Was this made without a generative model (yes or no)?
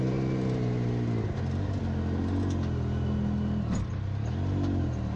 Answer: yes